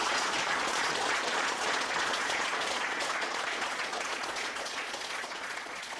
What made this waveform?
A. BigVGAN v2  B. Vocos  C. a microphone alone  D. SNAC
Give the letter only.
B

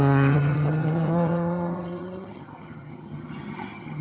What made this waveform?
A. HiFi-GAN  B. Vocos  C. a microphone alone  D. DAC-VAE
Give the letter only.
A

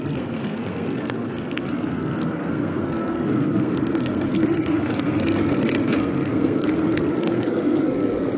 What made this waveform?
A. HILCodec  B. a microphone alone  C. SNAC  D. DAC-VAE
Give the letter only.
C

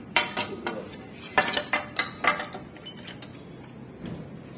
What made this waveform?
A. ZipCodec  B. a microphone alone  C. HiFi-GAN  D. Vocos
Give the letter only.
B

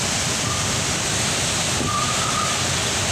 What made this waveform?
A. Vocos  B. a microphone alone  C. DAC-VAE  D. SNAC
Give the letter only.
B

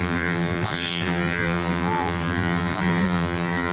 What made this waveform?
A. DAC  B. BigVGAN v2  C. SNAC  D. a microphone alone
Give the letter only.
B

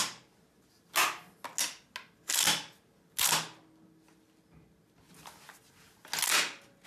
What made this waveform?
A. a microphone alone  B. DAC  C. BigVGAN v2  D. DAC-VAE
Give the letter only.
A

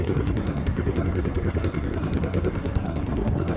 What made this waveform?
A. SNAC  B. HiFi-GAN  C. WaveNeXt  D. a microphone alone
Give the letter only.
A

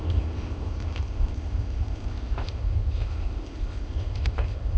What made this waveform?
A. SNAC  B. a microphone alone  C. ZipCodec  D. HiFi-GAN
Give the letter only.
C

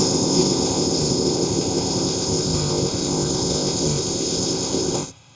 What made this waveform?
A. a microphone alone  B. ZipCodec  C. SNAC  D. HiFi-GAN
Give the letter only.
B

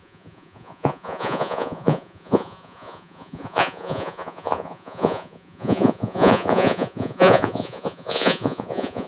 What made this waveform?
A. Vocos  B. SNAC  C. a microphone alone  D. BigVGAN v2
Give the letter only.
A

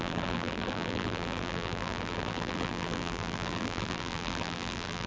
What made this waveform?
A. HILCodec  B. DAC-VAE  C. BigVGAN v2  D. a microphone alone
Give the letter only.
C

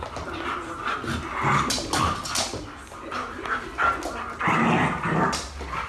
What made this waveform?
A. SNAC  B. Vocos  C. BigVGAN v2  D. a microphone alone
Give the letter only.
D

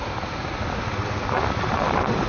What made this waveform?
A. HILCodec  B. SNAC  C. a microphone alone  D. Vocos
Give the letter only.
C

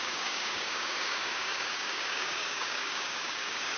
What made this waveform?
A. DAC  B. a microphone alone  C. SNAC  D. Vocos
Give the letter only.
A